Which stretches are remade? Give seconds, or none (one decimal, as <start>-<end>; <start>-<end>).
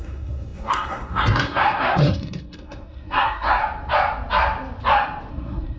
0.0-3.6; 5.3-5.8